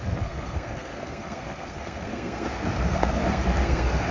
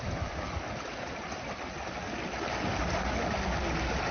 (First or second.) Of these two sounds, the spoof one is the first